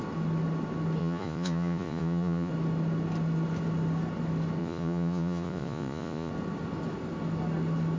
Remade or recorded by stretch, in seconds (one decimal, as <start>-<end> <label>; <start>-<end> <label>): 0.0-1.0 recorded; 1.0-2.5 remade; 2.5-4.6 recorded; 4.6-6.3 remade; 6.3-8.0 recorded